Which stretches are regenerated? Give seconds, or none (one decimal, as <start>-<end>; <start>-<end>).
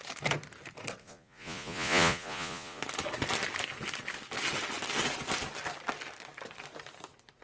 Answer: 1.0-2.8